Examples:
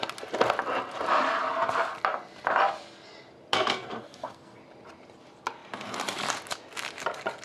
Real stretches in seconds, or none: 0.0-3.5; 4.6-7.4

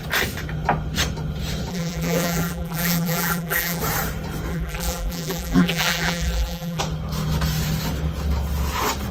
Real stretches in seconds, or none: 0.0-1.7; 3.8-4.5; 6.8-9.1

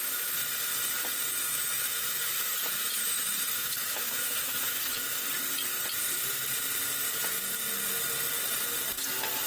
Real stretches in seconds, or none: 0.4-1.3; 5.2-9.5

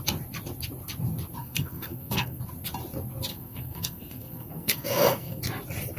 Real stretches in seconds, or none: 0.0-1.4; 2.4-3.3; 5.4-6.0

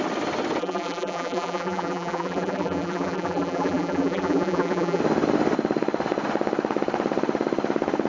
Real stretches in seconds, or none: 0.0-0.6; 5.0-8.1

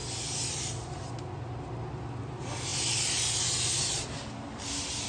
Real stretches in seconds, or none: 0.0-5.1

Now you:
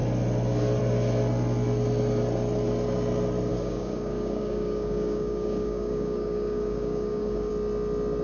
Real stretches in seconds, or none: 0.0-3.5; 7.5-8.2